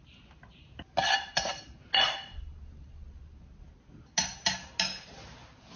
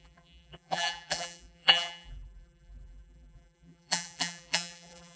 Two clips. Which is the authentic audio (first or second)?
first